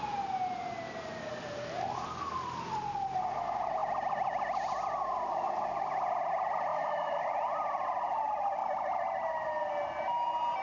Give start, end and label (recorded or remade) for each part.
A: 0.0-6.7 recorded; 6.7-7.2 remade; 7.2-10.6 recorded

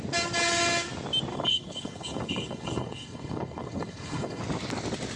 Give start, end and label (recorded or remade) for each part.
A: 0.0-1.3 recorded; 1.3-4.4 remade; 4.4-5.2 recorded

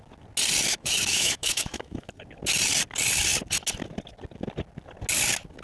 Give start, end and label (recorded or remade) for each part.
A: 0.0-0.7 recorded; 0.7-2.1 remade; 2.1-5.6 recorded